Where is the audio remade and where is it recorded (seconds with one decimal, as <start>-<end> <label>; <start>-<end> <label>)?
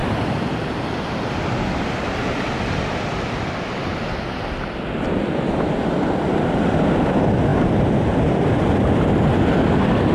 0.0-10.1 recorded